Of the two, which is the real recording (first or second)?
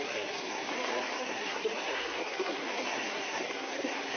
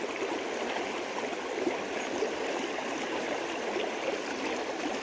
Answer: second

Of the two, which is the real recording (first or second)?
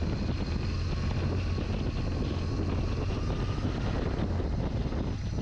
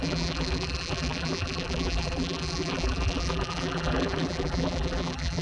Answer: first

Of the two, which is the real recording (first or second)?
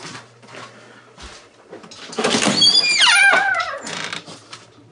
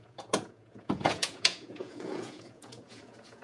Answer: first